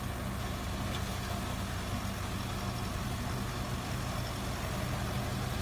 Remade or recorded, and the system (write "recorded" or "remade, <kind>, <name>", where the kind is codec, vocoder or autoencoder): recorded